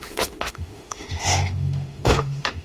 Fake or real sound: fake